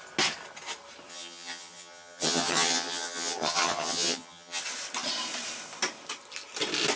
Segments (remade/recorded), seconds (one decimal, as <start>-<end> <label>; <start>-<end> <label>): 0.0-1.1 recorded; 1.1-4.6 remade; 4.6-7.0 recorded